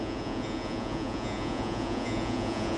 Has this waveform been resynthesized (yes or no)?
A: yes